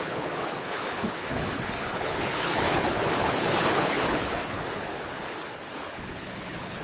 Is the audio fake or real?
fake